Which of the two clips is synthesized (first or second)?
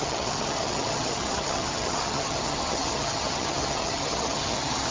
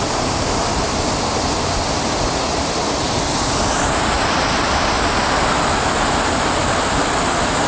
first